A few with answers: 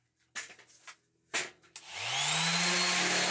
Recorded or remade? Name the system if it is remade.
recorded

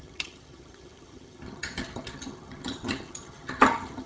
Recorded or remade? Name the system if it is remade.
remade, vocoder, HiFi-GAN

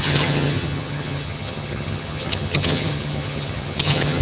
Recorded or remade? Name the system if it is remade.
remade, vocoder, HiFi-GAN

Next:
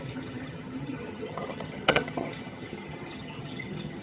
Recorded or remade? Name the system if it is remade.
remade, vocoder, HiFi-GAN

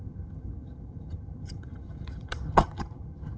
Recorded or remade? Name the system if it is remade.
remade, vocoder, HiFi-GAN